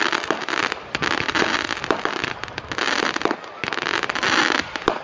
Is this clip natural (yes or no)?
yes